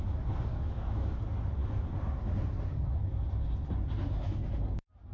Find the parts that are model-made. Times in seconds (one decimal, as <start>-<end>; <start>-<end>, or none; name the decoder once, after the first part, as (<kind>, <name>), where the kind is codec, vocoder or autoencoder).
0.5-1.2 (autoencoder, DAC-VAE)